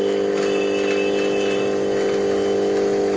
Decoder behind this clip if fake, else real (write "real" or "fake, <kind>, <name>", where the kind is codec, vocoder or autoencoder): real